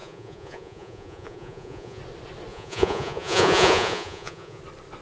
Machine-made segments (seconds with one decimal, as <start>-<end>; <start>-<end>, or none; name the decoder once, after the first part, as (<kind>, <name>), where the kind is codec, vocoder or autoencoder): 0.0-2.0 (vocoder, Vocos); 2.5-4.6